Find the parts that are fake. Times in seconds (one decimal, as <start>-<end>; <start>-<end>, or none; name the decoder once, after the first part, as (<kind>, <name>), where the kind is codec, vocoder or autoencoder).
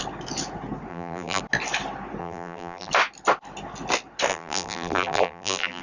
0.9-1.4 (vocoder, BigVGAN v2); 2.2-2.9; 4.3-5.8